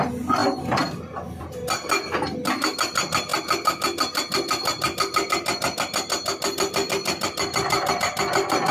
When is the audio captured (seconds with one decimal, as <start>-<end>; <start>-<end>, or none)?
0.0-8.7